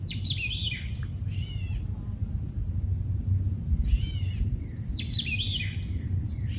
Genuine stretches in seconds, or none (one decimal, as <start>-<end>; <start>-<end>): 0.0-6.6